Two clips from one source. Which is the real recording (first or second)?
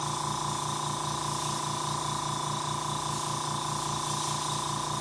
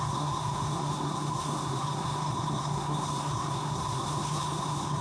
first